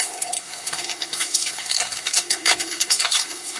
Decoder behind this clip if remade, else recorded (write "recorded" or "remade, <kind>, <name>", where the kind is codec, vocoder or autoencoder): remade, codec, SNAC